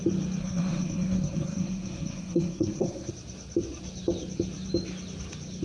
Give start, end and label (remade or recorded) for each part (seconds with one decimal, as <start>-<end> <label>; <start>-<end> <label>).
0.0-0.4 recorded; 0.4-3.1 remade; 3.1-5.6 recorded